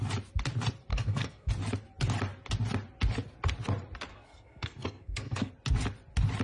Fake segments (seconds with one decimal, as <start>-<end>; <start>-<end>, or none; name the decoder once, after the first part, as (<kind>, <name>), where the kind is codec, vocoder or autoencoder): 0.9-1.5 (codec, SNAC); 4.1-5.5